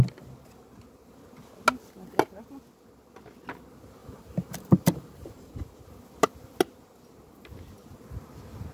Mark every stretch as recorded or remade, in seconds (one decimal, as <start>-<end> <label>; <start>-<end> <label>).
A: 0.0-4.0 recorded; 4.0-5.5 remade; 5.5-8.7 recorded